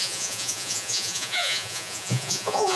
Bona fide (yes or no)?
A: no